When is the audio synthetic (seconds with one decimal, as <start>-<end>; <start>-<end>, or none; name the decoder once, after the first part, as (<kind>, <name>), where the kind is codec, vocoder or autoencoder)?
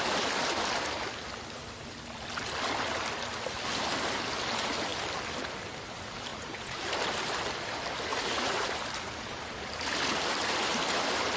6.3-6.8 (vocoder, Vocos); 8.1-8.7